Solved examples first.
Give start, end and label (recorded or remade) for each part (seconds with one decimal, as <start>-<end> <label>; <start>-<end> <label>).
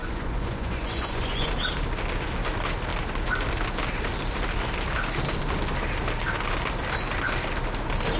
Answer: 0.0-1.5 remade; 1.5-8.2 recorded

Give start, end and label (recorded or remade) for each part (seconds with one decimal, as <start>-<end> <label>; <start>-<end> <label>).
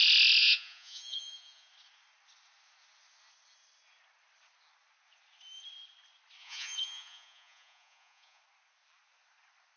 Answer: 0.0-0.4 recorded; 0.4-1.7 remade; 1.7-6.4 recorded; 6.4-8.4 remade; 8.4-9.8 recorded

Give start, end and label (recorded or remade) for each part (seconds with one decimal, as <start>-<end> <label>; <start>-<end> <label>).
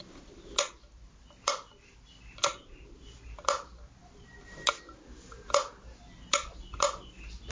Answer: 0.0-7.5 recorded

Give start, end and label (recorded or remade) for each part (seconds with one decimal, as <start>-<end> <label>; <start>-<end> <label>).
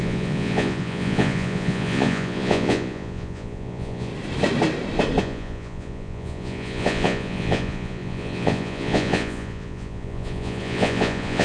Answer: 0.0-4.1 remade; 4.1-5.2 recorded; 5.2-11.4 remade